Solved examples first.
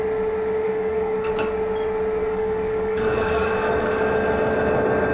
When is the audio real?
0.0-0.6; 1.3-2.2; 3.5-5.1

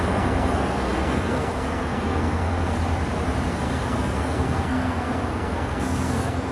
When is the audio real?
2.8-3.5

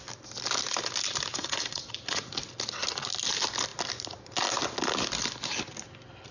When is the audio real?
0.0-1.3; 2.3-6.3

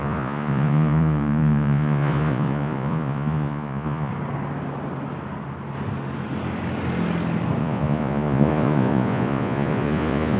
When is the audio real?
4.1-7.6

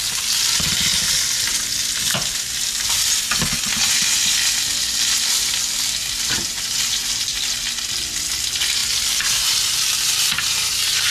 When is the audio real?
0.0-11.1